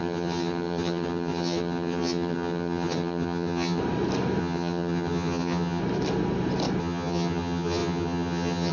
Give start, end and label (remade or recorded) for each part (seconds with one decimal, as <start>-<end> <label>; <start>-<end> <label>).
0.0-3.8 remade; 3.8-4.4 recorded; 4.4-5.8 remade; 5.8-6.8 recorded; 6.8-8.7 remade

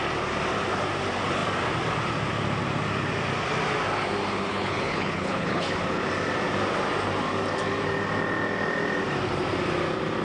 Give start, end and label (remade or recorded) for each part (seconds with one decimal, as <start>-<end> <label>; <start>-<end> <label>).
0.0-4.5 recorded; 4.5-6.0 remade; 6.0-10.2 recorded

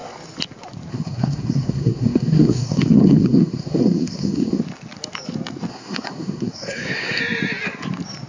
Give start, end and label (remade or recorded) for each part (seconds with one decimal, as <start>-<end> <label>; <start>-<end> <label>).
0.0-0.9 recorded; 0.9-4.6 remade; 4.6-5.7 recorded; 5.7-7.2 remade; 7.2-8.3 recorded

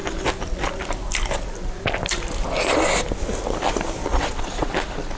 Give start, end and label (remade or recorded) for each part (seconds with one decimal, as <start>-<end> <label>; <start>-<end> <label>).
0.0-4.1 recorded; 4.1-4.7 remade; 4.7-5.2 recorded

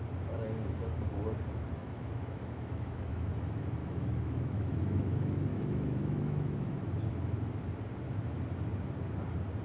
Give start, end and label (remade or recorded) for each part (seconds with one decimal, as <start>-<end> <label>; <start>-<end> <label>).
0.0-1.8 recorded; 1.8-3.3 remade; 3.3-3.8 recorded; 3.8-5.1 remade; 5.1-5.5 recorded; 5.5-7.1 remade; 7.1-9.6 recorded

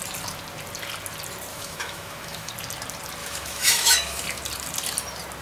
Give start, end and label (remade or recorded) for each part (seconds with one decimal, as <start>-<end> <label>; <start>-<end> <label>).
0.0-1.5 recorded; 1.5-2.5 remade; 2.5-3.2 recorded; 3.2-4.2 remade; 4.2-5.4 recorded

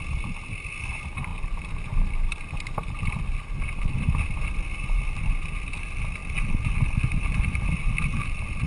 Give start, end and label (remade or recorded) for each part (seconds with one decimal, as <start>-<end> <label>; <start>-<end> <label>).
0.0-8.7 recorded

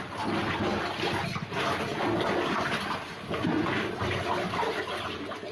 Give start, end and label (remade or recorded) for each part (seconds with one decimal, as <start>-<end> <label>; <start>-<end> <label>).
0.0-5.5 recorded